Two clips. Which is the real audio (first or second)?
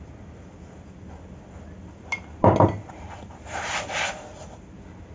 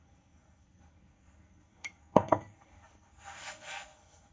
first